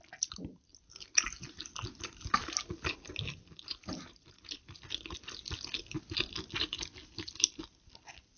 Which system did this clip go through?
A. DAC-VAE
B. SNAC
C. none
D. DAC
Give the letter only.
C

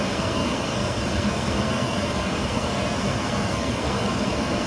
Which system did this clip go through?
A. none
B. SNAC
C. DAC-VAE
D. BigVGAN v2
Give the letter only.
B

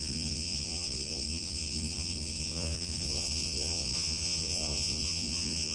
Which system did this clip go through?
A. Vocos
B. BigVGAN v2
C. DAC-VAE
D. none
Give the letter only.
A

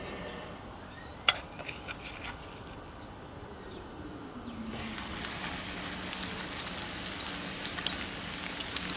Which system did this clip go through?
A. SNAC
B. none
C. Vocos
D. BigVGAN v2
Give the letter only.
B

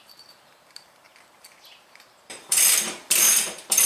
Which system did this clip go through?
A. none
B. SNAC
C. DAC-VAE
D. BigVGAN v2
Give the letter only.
D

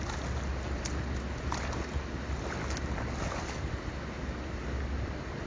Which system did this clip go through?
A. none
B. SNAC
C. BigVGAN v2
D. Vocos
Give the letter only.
A